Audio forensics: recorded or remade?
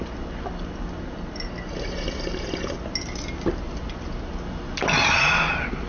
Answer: recorded